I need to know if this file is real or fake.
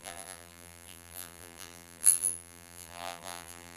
fake